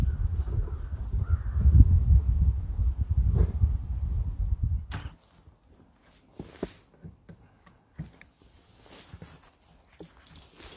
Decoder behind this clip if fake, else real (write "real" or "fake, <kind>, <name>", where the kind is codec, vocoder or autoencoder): real